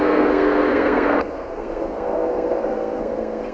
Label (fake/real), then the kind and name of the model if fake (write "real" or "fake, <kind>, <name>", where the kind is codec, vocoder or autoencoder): fake, codec, SNAC